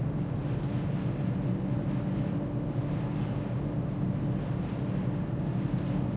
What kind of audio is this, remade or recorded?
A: recorded